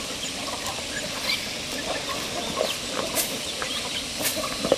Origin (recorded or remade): recorded